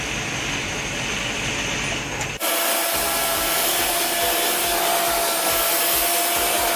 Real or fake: real